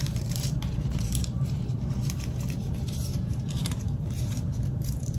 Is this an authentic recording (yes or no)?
no